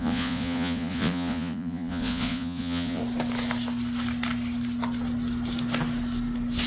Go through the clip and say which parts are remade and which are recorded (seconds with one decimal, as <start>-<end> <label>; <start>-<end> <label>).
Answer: 0.0-3.0 remade; 3.0-6.7 recorded